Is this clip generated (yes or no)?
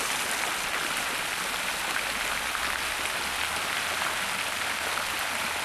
no